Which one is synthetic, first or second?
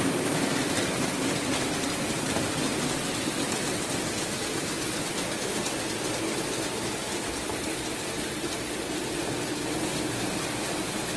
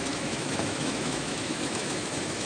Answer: second